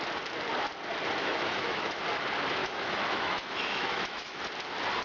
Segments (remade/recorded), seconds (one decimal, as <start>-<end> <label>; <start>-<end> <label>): 0.0-1.2 recorded; 1.2-2.0 remade; 2.0-2.6 recorded; 2.6-4.4 remade; 4.4-5.0 recorded